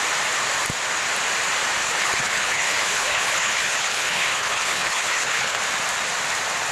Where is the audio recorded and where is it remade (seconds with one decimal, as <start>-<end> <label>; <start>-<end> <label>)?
0.0-1.8 recorded; 1.8-5.6 remade; 5.6-6.7 recorded